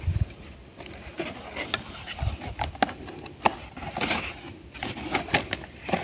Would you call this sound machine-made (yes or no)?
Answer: no